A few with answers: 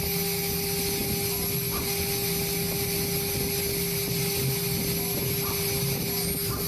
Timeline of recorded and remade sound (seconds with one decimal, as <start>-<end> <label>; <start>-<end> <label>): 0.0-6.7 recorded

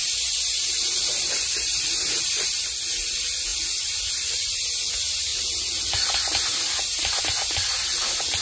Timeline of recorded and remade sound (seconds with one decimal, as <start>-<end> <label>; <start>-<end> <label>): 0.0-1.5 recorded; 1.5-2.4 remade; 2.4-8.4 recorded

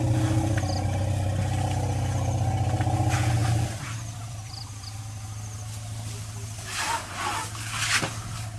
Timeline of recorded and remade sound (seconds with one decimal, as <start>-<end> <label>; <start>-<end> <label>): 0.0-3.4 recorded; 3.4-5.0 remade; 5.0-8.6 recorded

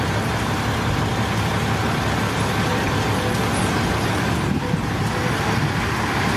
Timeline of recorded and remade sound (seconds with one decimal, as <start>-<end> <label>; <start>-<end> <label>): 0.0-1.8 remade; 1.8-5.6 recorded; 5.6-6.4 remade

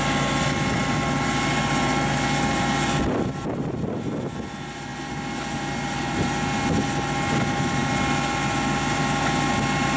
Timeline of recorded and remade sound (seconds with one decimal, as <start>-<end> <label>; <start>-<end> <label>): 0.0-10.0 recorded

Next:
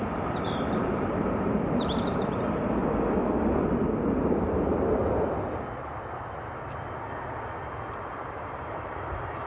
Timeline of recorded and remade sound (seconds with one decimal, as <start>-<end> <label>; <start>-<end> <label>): 0.0-2.8 remade; 2.8-4.0 recorded; 4.0-5.0 remade; 5.0-8.2 recorded; 8.2-9.5 remade

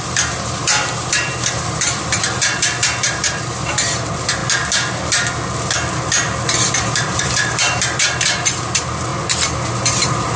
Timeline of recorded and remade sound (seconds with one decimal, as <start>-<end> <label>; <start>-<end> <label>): 0.0-4.4 remade; 4.4-6.7 recorded; 6.7-9.1 remade; 9.1-9.7 recorded; 9.7-10.4 remade

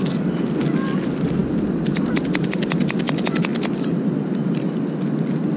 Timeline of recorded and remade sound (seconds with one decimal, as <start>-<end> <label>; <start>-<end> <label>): 0.0-1.4 recorded; 1.4-2.2 remade; 2.2-5.6 recorded